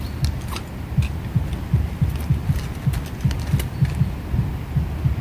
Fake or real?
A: real